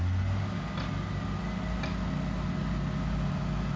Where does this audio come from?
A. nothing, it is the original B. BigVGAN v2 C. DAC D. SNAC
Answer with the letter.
A